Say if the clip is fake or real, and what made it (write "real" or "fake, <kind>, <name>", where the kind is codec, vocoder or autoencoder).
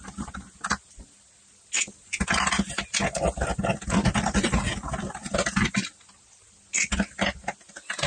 real